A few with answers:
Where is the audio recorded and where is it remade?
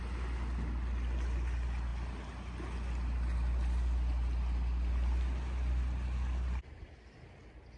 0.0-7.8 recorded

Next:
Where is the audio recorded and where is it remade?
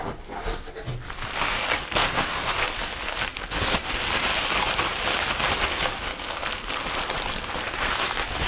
0.0-2.0 recorded; 2.0-2.6 remade; 2.6-8.5 recorded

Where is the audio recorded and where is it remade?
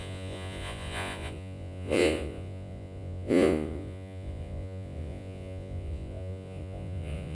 0.0-7.3 remade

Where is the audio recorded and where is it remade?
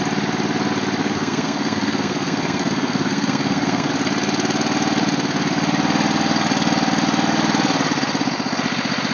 0.0-1.0 recorded; 1.0-3.9 remade; 3.9-9.1 recorded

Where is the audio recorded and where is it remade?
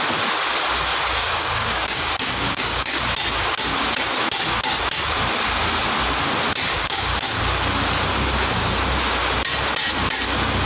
0.0-1.2 recorded; 1.2-3.0 remade; 3.0-6.7 recorded; 6.7-7.4 remade; 7.4-10.7 recorded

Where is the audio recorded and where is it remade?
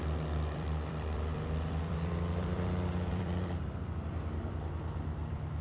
0.0-5.6 remade